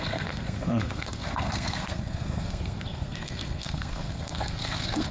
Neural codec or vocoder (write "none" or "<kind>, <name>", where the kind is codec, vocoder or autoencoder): codec, SNAC